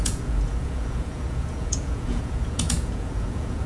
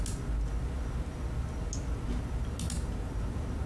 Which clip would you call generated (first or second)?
first